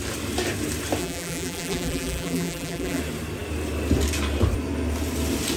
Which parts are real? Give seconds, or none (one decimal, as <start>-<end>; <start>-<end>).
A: 0.0-1.0; 3.0-5.6